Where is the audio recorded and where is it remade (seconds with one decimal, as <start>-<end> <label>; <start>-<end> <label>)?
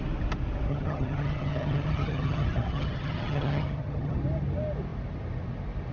0.0-0.7 recorded; 0.7-4.2 remade; 4.2-5.9 recorded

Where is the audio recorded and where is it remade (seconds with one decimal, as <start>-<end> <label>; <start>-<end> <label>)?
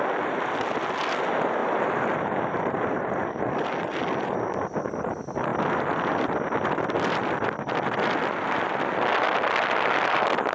0.0-1.6 recorded; 1.6-3.4 remade; 3.4-10.5 recorded